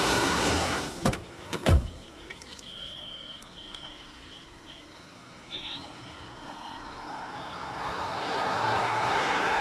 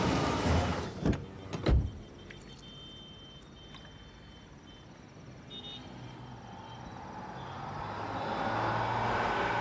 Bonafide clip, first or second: second